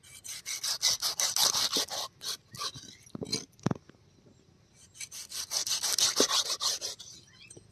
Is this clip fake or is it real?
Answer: real